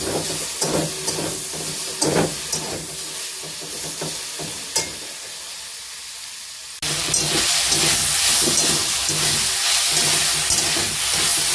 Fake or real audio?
real